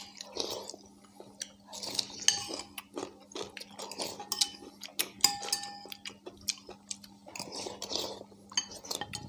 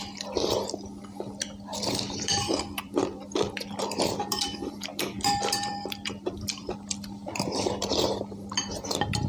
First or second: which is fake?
second